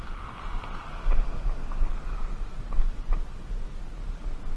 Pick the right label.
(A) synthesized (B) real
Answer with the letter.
B